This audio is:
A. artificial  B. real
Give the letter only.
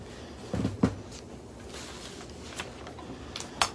B